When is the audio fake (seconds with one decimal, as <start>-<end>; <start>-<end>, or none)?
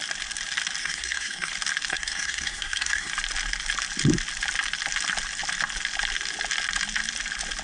0.8-1.5; 1.9-3.1